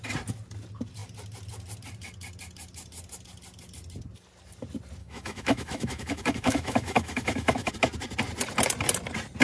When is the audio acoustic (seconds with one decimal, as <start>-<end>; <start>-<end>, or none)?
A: 0.0-5.0; 7.7-9.4